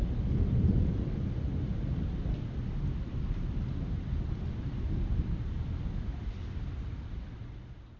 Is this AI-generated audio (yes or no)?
no